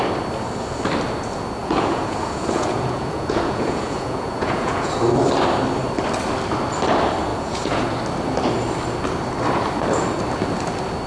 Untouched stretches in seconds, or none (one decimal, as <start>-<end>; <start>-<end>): 0.0-1.6; 4.9-7.3; 7.9-11.1